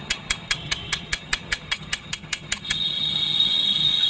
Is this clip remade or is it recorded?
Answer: remade